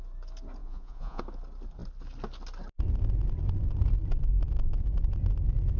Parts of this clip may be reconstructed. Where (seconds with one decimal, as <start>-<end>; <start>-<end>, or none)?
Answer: 0.6-1.2